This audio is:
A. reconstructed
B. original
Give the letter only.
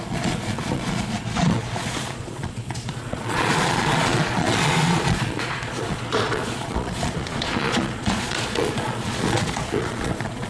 A